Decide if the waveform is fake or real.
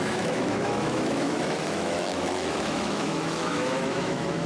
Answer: fake